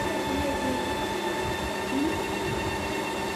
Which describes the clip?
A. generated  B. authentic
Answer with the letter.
B